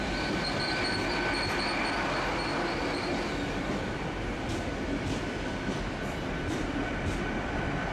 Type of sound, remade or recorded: recorded